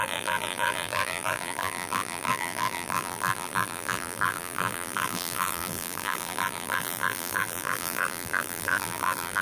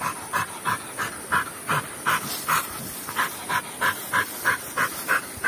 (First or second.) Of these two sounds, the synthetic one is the first